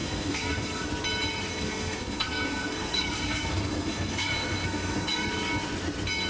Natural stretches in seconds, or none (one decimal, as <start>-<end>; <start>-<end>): 0.9-1.5; 5.3-6.3